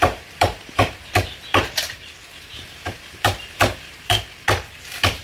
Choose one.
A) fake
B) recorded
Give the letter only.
A